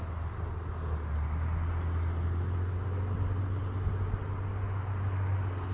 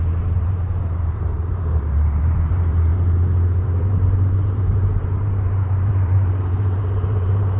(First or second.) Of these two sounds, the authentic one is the first